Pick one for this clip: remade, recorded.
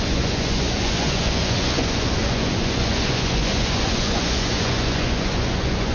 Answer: remade